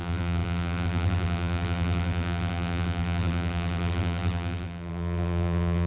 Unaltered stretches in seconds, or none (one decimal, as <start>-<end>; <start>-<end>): none